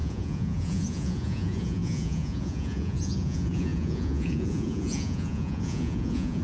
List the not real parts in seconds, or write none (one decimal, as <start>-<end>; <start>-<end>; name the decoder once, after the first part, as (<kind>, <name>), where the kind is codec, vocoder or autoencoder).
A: 0.0-6.4 (vocoder, Vocos)